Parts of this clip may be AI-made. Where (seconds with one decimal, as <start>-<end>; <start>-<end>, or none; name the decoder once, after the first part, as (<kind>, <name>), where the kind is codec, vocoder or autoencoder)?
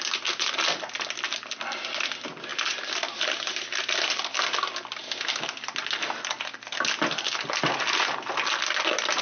none